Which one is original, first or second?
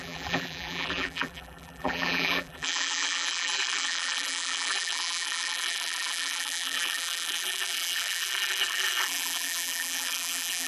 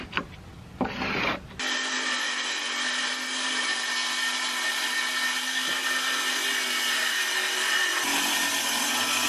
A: second